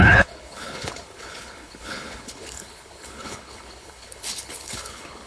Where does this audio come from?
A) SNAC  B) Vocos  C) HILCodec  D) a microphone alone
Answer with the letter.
C